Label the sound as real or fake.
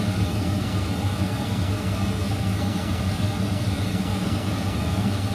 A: fake